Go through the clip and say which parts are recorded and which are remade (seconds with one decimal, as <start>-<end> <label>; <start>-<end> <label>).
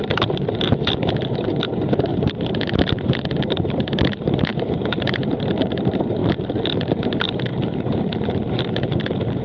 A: 0.0-6.2 remade; 6.2-6.8 recorded; 6.8-9.4 remade